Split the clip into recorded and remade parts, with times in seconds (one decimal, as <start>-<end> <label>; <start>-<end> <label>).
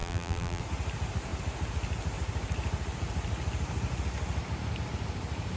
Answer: 0.0-0.6 remade; 0.6-5.6 recorded